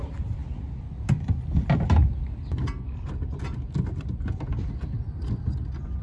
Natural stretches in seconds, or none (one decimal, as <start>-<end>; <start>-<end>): 0.0-6.0